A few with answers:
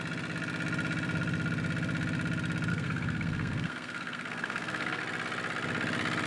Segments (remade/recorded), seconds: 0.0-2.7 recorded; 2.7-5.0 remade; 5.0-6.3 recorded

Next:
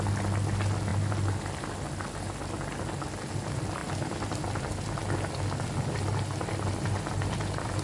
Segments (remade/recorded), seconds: 0.0-7.8 recorded

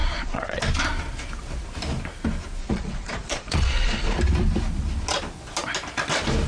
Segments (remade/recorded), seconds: 0.0-0.6 remade; 0.6-2.6 recorded; 2.6-4.2 remade; 4.2-6.5 recorded

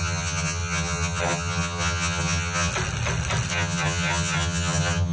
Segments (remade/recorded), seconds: 0.0-2.7 remade; 2.7-3.5 recorded; 3.5-5.1 remade

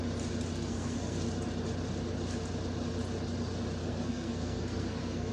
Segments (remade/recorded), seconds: 0.0-0.5 recorded; 0.5-1.2 remade; 1.2-3.8 recorded; 3.8-5.3 remade

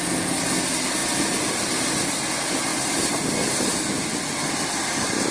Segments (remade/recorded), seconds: 0.0-5.3 recorded

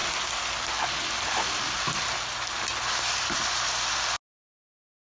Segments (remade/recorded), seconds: 0.0-5.0 recorded

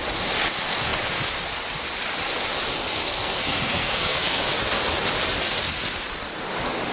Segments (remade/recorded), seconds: 0.0-3.0 recorded; 3.0-4.4 remade; 4.4-6.9 recorded